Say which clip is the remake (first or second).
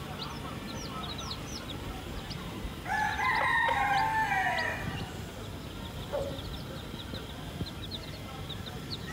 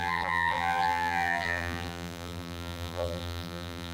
second